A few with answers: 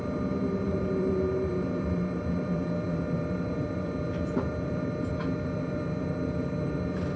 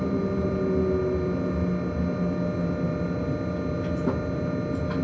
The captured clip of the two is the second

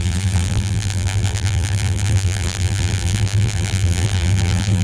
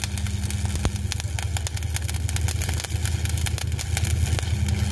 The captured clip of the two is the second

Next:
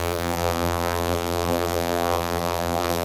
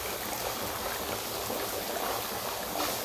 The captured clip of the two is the second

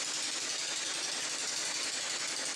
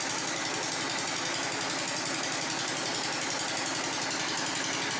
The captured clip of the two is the second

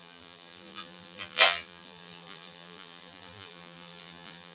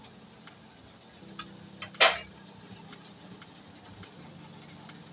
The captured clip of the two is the second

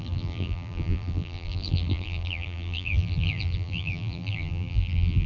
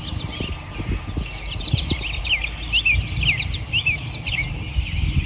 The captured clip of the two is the second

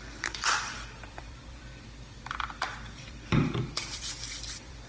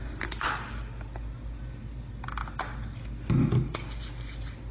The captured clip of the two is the second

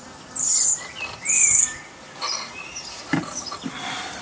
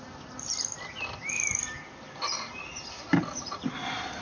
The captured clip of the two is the second